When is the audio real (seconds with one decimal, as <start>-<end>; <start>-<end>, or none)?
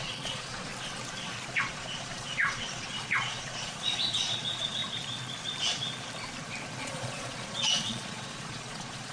0.7-1.6; 4.8-6.8